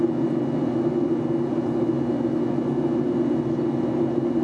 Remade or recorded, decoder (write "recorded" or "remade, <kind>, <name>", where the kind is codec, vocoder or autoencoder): recorded